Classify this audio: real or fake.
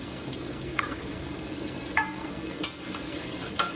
fake